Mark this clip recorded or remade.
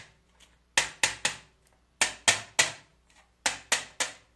recorded